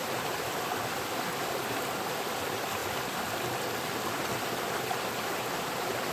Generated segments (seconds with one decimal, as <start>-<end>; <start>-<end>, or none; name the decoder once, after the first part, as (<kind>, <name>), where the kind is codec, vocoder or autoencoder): none